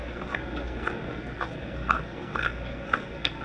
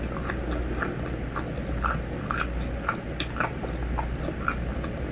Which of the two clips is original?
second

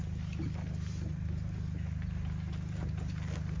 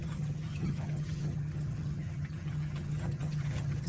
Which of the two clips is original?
first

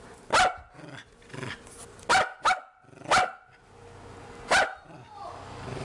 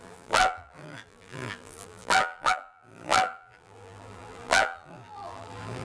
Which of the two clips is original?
first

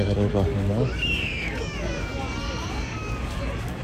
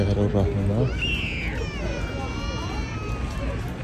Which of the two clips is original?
second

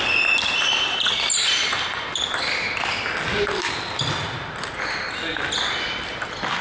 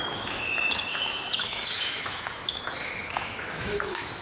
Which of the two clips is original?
first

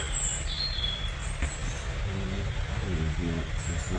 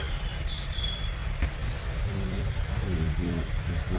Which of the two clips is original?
first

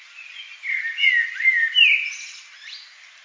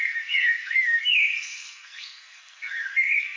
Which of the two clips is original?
first